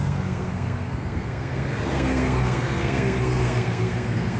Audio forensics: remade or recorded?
remade